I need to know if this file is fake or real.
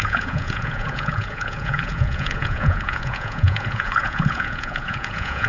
fake